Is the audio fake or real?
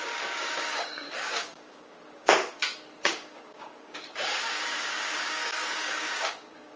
fake